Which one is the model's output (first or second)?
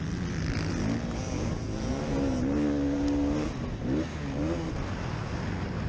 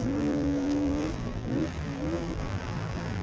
second